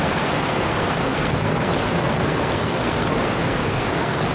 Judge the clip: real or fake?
fake